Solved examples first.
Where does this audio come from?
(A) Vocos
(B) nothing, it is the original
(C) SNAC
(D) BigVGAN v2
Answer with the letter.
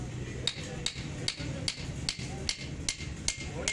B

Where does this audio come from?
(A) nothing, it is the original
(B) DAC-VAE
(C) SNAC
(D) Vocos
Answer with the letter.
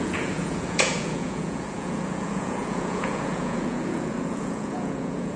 D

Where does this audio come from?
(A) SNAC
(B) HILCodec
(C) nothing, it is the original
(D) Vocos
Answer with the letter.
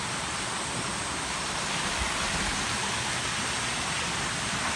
C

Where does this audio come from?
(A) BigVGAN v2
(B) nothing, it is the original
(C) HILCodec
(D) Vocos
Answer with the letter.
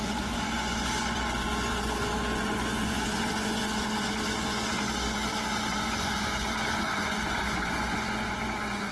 D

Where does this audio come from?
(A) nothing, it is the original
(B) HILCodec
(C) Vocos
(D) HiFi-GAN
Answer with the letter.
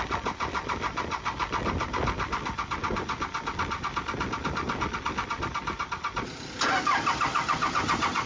A